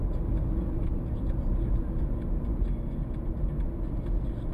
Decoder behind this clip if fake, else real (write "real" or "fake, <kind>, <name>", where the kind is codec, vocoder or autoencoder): real